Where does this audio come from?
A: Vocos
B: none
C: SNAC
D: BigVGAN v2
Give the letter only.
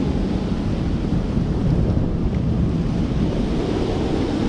D